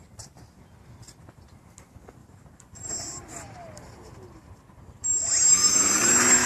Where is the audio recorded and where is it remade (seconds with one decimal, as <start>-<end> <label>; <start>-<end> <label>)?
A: 0.0-2.2 recorded; 2.2-6.1 remade; 6.1-6.5 recorded

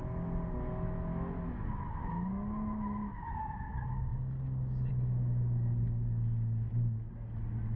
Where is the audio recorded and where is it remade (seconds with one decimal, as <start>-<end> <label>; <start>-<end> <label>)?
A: 0.0-0.7 recorded; 0.7-3.3 remade; 3.3-7.8 recorded

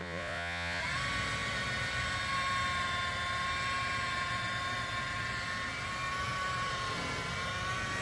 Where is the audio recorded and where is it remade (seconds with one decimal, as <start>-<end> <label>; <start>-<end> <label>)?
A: 0.0-0.8 remade; 0.8-8.0 recorded

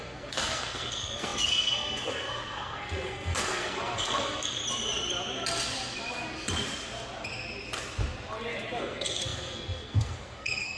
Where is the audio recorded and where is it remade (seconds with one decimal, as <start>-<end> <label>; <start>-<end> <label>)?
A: 0.0-4.6 remade; 4.6-8.8 recorded; 8.8-10.8 remade

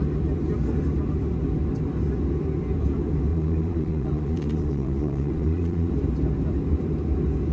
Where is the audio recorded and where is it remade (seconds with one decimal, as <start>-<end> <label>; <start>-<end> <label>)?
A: 0.0-3.3 recorded; 3.3-5.9 remade; 5.9-7.5 recorded

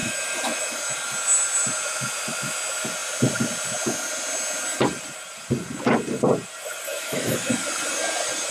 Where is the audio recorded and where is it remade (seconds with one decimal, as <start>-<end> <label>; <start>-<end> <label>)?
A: 0.0-0.6 remade; 0.6-6.9 recorded; 6.9-7.5 remade; 7.5-8.5 recorded

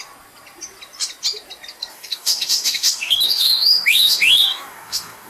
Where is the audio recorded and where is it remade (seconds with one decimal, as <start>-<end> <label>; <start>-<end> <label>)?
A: 0.0-1.9 recorded; 1.9-5.3 remade